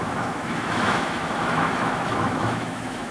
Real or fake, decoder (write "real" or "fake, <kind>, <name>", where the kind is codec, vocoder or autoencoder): fake, autoencoder, DAC-VAE